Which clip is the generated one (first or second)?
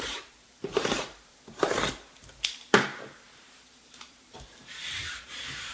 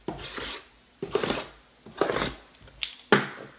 first